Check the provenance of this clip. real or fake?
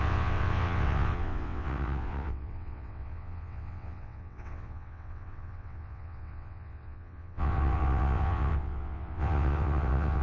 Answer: fake